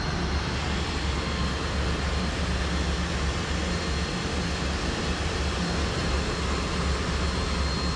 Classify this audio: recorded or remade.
recorded